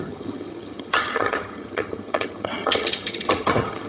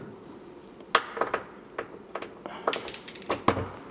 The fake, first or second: first